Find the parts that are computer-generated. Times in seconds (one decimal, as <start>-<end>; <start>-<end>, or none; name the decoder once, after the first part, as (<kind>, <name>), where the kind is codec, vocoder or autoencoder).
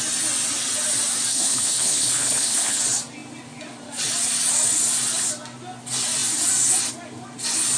1.3-2.8 (codec, HILCodec)